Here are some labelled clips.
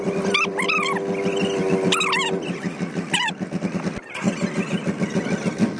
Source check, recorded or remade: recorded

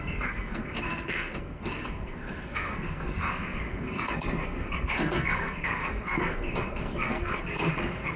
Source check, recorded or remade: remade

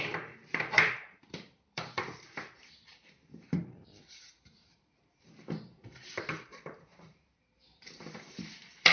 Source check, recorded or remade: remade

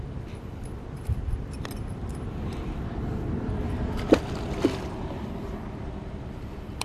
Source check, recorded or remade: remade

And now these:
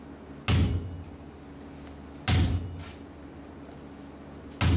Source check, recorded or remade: recorded